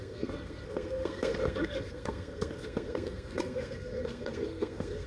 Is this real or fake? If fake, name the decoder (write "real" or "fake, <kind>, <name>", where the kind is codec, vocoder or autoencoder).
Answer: fake, codec, SNAC